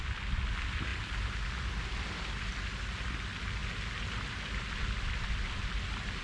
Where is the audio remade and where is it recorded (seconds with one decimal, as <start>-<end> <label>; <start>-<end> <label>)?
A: 0.0-6.2 recorded